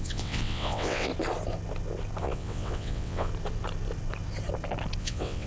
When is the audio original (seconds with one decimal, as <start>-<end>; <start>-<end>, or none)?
1.1-2.2; 3.3-5.0